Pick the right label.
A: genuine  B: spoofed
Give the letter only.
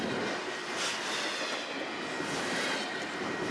A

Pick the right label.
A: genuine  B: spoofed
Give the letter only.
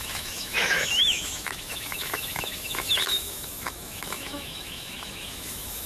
B